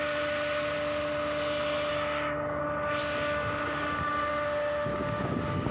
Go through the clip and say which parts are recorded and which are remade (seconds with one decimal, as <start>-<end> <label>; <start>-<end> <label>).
0.0-1.9 recorded; 1.9-2.6 remade; 2.6-3.0 recorded; 3.0-4.3 remade; 4.3-4.9 recorded; 4.9-5.7 remade